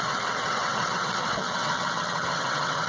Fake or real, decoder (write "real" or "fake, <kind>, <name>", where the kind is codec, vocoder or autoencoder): fake, vocoder, WaveNeXt